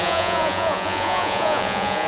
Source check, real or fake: fake